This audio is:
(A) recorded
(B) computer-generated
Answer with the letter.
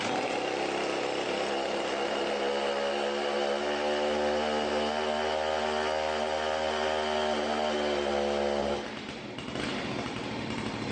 A